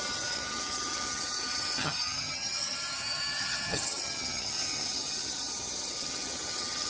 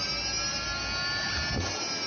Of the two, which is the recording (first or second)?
second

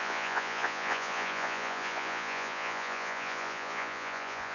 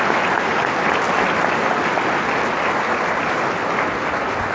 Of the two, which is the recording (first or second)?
second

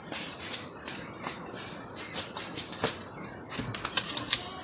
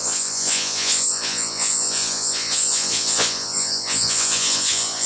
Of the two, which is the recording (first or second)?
first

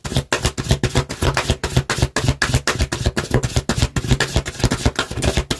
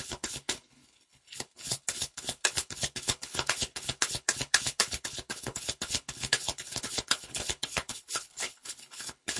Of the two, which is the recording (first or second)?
first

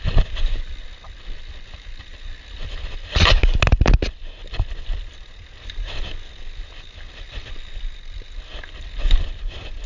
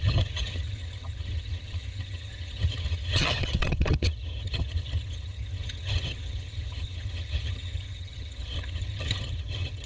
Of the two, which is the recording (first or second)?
first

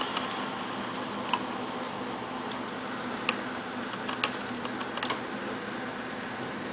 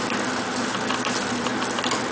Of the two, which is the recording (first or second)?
first